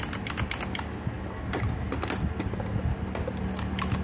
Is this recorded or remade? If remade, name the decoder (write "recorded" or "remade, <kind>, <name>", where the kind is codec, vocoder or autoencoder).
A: recorded